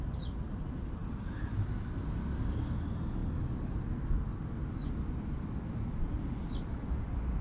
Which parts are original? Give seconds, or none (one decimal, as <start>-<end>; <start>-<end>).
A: 0.0-7.4